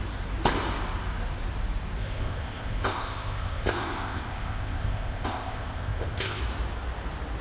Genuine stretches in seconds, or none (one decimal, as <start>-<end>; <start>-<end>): 0.0-2.0; 6.4-7.4